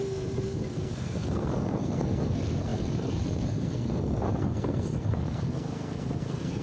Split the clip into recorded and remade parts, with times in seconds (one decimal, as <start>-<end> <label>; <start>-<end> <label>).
0.0-6.6 remade